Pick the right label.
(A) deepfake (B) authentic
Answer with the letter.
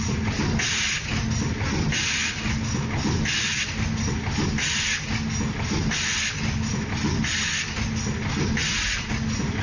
B